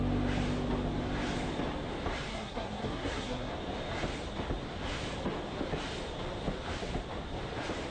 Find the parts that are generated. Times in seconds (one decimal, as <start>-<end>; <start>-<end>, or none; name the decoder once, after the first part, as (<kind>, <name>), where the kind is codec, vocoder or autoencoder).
2.3-3.5 (codec, SNAC)